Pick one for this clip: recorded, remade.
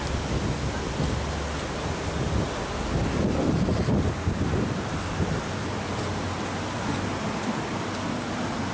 recorded